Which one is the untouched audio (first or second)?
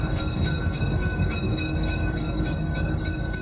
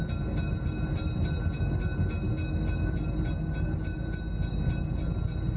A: second